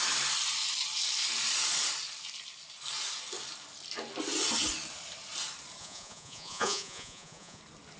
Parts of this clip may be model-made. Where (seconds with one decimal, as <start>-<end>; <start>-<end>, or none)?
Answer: 5.8-7.6